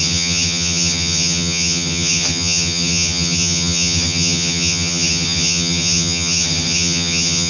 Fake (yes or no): yes